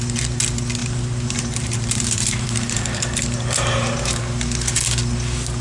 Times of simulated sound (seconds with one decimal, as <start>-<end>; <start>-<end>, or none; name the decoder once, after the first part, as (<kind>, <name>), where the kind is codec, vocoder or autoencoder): 0.8-4.2 (vocoder, BigVGAN v2)